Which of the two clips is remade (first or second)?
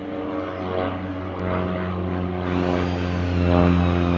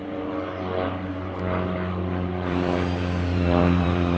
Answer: second